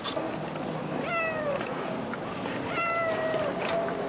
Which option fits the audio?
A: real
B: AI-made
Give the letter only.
A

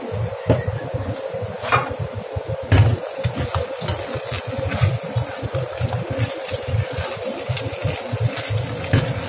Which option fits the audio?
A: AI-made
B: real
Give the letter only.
B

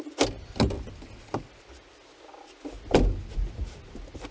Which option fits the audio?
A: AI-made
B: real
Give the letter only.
B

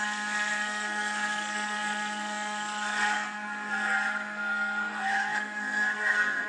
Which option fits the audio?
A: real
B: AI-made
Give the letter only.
B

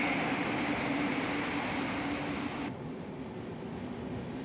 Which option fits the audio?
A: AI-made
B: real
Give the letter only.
B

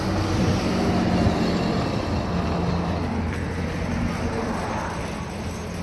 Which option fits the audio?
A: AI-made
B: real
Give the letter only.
B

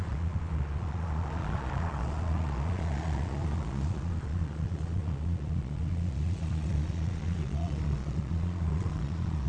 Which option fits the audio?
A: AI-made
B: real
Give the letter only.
A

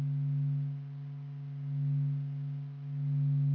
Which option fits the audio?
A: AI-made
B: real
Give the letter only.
B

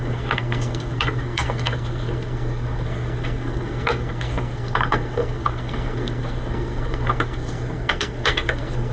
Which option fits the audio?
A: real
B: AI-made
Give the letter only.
B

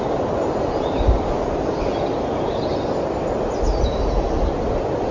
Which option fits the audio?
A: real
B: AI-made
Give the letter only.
A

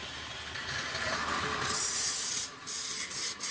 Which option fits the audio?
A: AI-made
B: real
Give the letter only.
B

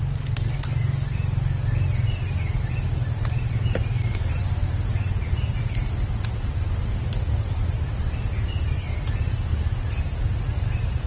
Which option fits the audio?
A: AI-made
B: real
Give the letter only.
B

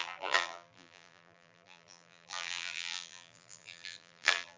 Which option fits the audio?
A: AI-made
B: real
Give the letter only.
A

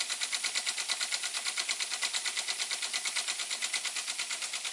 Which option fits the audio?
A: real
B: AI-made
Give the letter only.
A